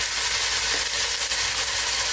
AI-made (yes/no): no